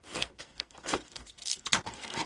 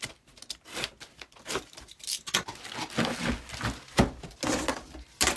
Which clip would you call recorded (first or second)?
second